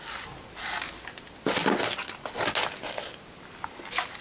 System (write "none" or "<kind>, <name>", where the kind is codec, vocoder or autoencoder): none